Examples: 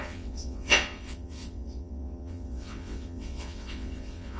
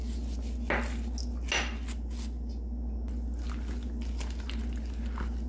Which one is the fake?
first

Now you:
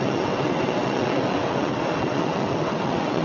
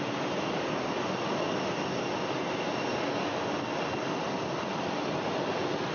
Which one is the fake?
first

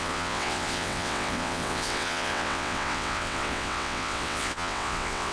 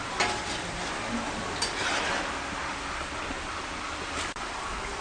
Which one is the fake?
first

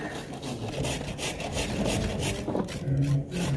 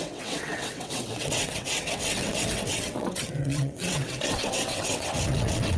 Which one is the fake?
second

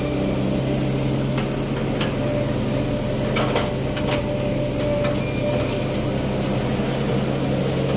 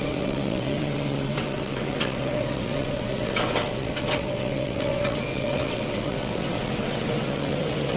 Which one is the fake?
second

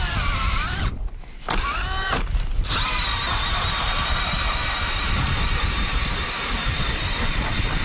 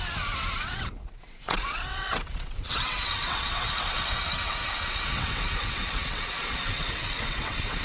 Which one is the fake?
second